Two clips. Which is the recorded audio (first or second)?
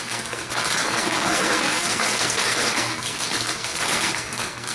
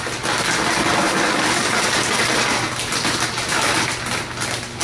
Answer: second